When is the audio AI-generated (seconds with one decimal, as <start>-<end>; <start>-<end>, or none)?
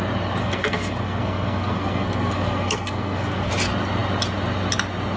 0.4-3.5